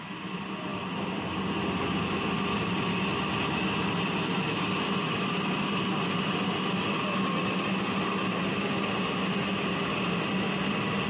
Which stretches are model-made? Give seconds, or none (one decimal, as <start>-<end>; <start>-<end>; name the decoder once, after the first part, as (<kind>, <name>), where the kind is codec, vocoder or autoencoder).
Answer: none